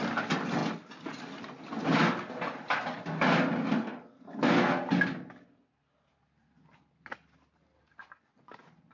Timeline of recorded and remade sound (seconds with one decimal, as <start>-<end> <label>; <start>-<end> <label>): 0.0-8.9 recorded